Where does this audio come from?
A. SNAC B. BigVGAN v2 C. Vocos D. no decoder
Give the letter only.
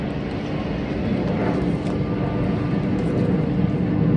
D